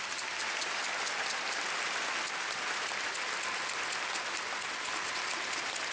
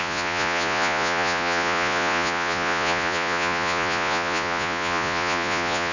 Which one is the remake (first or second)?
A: second